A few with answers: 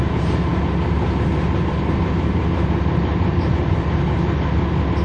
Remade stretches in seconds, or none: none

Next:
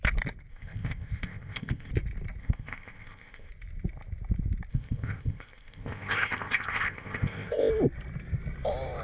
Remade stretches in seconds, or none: 0.5-1.9; 2.4-3.5; 4.7-7.7

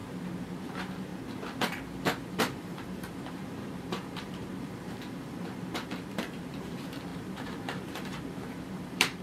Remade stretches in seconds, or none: 0.6-1.1; 2.2-9.2